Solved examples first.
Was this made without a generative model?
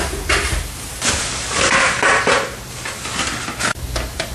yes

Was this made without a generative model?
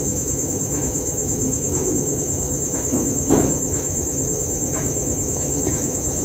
no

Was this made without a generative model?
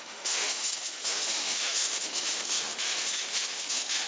no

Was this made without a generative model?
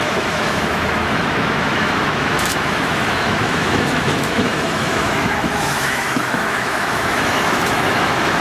no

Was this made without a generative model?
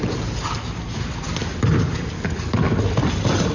yes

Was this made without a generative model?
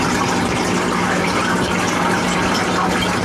yes